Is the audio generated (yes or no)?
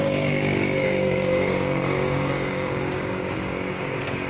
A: yes